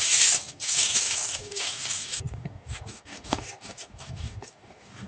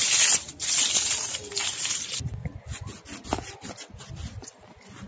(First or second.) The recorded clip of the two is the second